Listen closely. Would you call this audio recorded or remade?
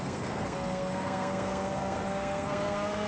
remade